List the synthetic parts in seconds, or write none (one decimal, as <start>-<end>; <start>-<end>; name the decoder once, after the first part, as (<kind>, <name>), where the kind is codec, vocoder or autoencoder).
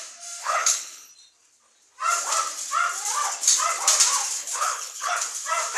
0.4-1.1 (codec, HILCodec); 4.4-5.1